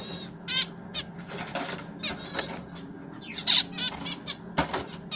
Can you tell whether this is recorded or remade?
recorded